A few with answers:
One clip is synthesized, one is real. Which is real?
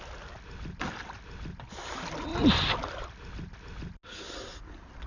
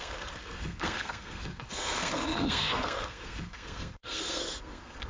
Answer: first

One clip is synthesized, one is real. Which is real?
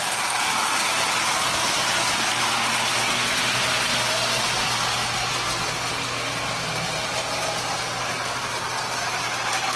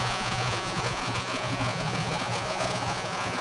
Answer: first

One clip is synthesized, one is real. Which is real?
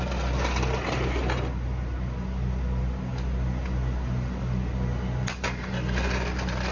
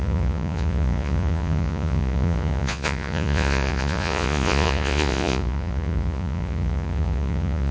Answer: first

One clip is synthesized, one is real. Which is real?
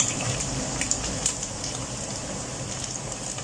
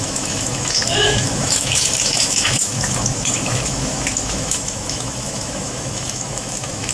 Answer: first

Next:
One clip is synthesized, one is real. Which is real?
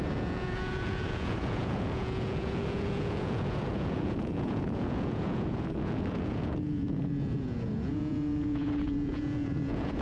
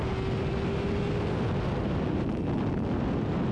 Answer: second